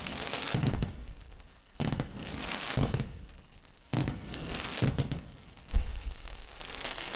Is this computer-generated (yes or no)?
yes